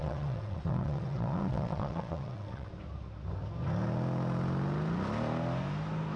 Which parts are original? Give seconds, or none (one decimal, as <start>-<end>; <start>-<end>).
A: 2.7-6.2